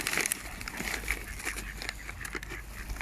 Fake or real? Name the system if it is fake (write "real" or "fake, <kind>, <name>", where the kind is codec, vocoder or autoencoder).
real